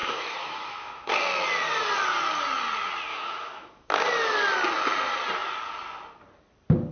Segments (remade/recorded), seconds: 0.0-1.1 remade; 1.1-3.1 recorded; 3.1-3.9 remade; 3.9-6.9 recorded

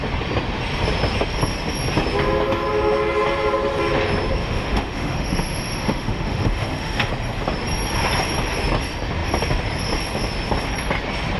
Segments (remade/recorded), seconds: 0.0-4.4 recorded; 4.4-7.1 remade; 7.1-11.4 recorded

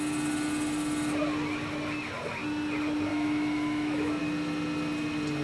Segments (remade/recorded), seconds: 0.0-3.1 recorded; 3.1-4.2 remade; 4.2-5.4 recorded

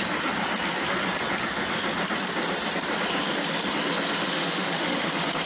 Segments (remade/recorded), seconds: 0.0-4.2 recorded; 4.2-5.1 remade; 5.1-5.5 recorded